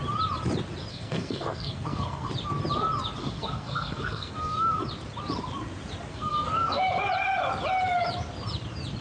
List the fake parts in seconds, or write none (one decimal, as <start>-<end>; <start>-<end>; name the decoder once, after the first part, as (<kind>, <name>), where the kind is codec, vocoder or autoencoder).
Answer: 0.9-2.3 (codec, SNAC); 3.2-4.8; 6.1-6.8